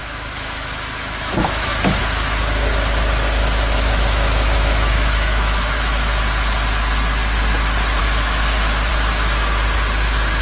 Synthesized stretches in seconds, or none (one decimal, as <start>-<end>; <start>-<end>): 0.0-2.0; 3.4-6.2; 8.0-8.9